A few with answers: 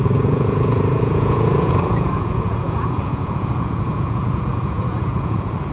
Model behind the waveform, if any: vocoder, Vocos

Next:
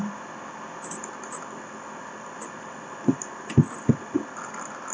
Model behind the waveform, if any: none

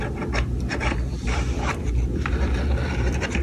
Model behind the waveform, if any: vocoder, BigVGAN v2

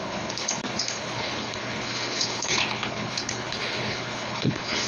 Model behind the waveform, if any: codec, HILCodec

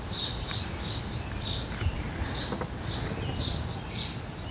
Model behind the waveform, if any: none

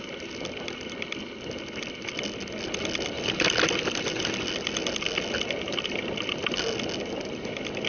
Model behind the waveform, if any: none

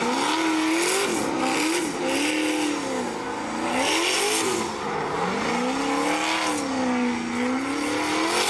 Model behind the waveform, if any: none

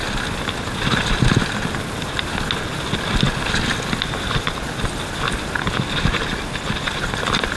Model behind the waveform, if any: none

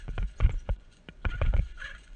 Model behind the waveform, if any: vocoder, Vocos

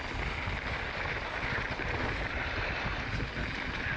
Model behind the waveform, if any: none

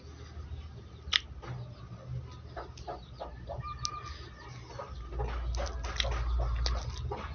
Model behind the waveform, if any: none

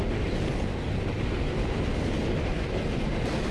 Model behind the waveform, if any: none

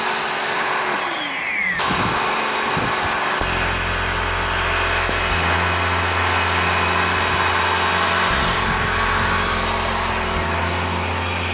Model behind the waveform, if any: none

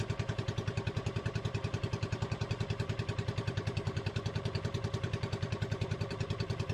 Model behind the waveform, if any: vocoder, BigVGAN v2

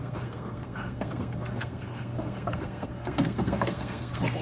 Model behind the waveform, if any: codec, SNAC